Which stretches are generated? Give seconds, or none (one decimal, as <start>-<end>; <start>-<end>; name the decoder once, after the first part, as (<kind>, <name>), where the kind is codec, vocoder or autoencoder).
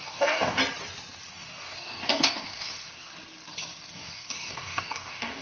0.0-0.6 (codec, DAC); 1.3-3.1; 3.9-5.4